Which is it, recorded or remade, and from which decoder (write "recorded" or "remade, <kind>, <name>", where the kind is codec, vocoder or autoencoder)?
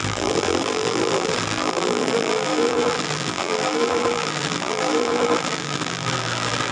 remade, vocoder, BigVGAN v2